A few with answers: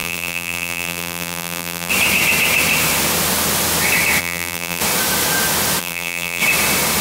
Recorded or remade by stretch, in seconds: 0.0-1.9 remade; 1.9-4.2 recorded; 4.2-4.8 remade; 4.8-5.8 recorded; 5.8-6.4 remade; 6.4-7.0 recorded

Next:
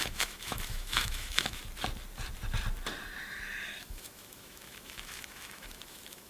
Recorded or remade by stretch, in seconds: 0.0-1.6 remade; 1.6-3.8 recorded; 3.8-6.3 remade

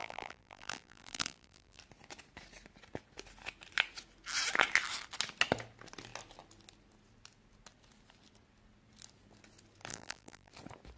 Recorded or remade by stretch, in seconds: 0.0-1.8 remade; 1.8-9.9 recorded; 9.9-10.5 remade; 10.5-11.0 recorded

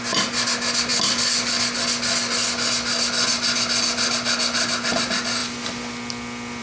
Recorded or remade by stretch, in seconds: 0.0-6.6 recorded